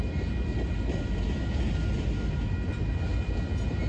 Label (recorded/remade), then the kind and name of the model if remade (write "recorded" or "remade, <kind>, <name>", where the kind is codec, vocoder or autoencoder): recorded